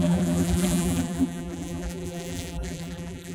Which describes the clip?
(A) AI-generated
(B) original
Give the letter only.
A